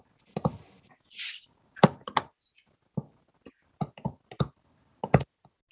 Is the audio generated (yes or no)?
no